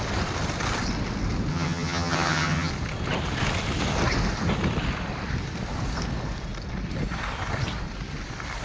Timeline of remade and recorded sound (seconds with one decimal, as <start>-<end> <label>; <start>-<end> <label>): 0.0-1.5 recorded; 1.5-2.7 remade; 2.7-8.6 recorded